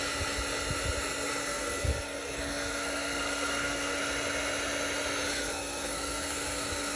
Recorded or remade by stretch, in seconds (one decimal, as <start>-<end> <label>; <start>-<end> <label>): 0.0-1.4 recorded; 1.4-4.0 remade; 4.0-5.3 recorded; 5.3-7.0 remade